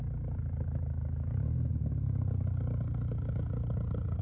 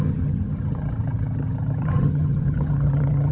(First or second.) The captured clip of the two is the first